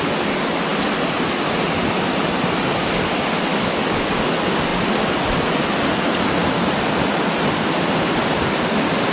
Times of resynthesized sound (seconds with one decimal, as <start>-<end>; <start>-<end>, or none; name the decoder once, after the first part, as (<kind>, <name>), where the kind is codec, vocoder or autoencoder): 3.5-4.1 (autoencoder, DAC-VAE)